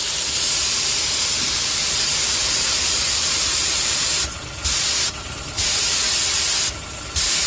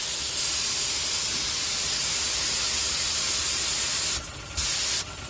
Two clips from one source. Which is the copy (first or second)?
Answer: first